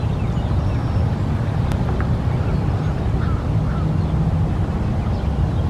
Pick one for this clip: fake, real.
real